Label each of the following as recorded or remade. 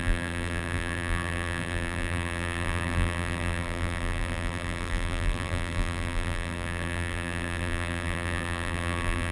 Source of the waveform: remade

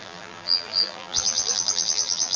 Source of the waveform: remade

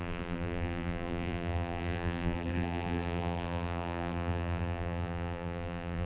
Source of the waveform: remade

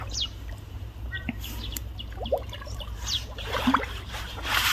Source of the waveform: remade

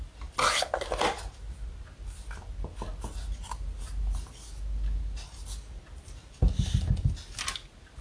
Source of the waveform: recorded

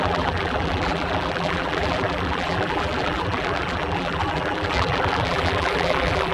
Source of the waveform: remade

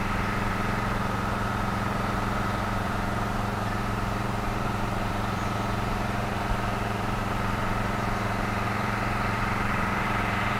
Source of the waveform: remade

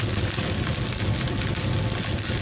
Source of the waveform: recorded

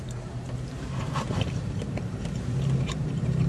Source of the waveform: remade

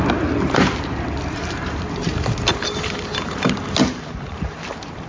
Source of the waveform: remade